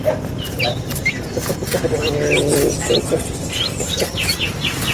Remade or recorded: recorded